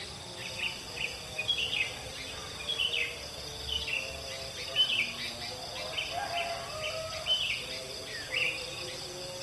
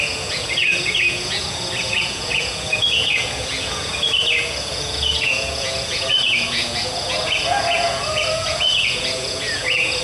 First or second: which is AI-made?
second